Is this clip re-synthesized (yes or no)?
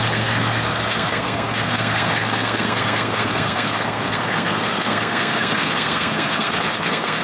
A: yes